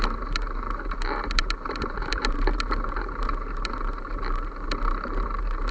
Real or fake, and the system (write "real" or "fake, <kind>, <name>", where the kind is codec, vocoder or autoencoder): fake, vocoder, BigVGAN v2